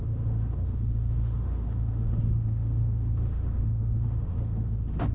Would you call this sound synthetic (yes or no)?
yes